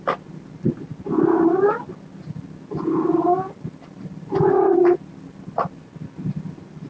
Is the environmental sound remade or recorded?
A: recorded